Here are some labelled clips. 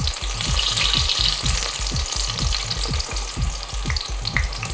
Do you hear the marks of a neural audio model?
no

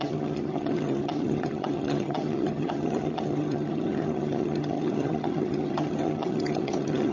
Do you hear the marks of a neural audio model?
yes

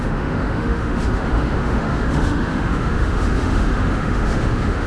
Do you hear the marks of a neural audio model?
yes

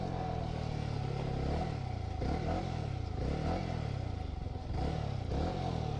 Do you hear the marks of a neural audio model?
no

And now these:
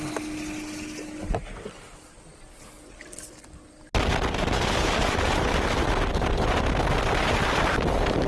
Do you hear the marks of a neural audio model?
no